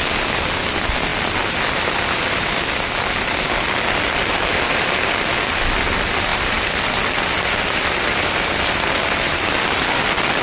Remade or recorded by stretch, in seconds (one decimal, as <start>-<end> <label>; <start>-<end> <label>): 0.0-1.1 recorded; 1.1-1.7 remade; 1.7-6.3 recorded; 6.3-9.5 remade; 9.5-10.4 recorded